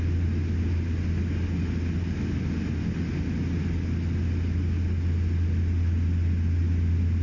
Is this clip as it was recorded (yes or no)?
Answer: yes